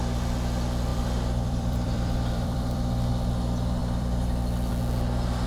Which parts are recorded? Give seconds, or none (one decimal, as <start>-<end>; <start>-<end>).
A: 0.0-0.9; 2.9-3.8; 4.7-5.5